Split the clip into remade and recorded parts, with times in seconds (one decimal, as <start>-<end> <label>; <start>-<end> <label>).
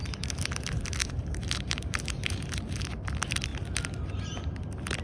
0.0-1.0 recorded; 1.0-2.6 remade; 2.6-5.0 recorded